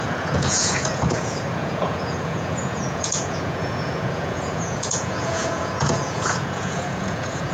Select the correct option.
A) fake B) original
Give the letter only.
A